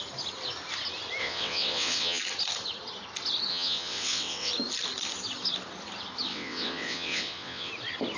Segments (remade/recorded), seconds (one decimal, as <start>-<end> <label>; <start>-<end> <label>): 0.0-1.2 recorded; 1.2-2.2 remade; 2.2-3.5 recorded; 3.5-4.5 remade; 4.5-6.3 recorded; 6.3-7.7 remade; 7.7-8.2 recorded